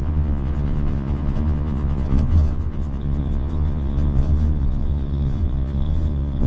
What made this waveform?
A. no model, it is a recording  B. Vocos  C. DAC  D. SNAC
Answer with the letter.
B